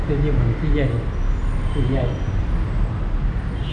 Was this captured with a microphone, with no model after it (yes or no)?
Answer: yes